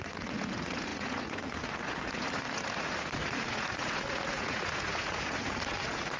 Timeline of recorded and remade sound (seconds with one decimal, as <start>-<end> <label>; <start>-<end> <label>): 0.0-6.2 remade